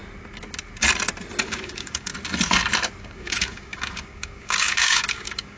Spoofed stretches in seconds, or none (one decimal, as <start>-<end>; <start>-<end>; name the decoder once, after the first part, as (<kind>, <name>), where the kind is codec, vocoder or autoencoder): 1.4-2.1 (codec, DAC); 3.0-5.6